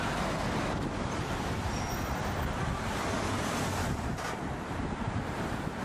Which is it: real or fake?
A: fake